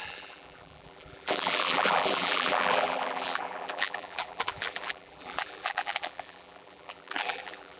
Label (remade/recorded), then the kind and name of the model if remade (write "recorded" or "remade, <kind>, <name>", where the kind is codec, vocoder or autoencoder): remade, vocoder, BigVGAN v2